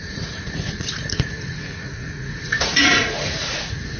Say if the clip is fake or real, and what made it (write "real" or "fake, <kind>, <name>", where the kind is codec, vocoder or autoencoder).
fake, vocoder, Vocos